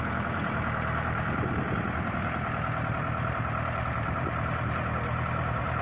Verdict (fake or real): fake